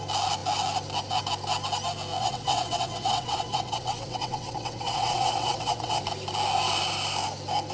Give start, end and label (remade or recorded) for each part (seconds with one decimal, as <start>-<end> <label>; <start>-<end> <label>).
0.0-2.2 recorded; 2.2-6.0 remade; 6.0-7.7 recorded